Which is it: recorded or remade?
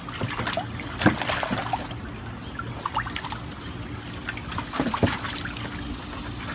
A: recorded